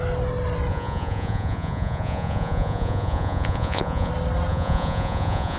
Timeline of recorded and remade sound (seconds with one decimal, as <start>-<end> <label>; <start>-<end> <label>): 0.0-0.7 recorded; 0.7-4.1 remade; 4.1-4.5 recorded; 4.5-5.6 remade